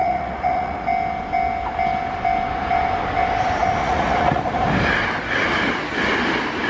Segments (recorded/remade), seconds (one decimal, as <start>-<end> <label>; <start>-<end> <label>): 0.0-0.8 remade; 0.8-3.8 recorded; 3.8-4.4 remade; 4.4-6.7 recorded